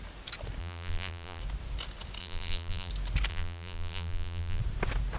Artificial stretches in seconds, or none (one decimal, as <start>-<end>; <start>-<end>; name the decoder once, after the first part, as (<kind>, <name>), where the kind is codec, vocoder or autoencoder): 0.6-1.4 (vocoder, BigVGAN v2); 2.2-2.9; 3.3-4.6